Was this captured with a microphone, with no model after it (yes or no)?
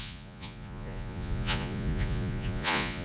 no